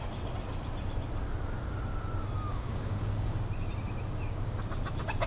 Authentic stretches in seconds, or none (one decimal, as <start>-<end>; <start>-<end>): 0.0-2.5; 3.4-5.3